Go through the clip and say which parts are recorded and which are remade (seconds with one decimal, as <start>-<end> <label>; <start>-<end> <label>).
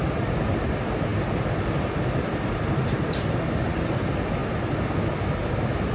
0.0-5.9 recorded